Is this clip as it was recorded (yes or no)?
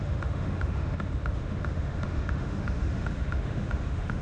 no